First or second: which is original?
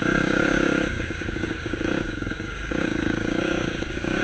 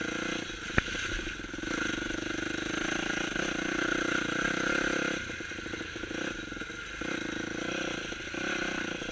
second